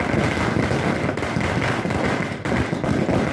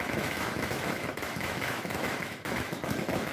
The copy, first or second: second